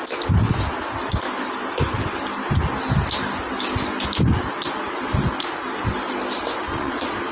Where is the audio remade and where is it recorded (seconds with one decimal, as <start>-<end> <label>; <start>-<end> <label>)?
0.0-6.7 recorded; 6.7-7.3 remade